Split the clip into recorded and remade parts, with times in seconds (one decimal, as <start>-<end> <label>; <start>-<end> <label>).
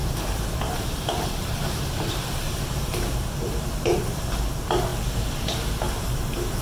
0.0-4.0 remade; 4.0-6.6 recorded